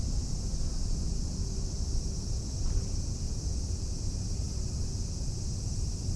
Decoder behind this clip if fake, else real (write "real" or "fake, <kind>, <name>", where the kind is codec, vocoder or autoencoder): real